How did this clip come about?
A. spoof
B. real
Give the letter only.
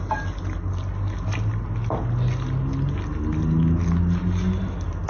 B